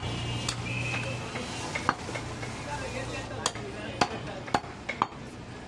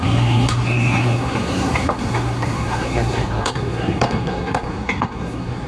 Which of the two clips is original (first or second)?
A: first